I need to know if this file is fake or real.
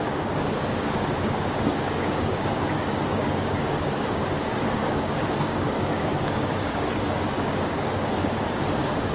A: fake